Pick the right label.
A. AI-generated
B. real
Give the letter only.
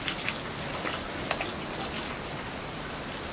B